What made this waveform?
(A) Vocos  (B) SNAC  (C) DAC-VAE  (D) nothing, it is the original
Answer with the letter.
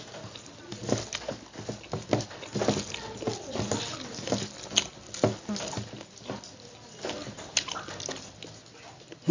D